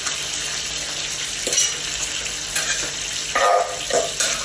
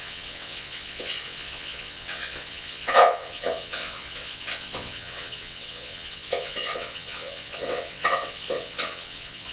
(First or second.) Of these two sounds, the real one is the first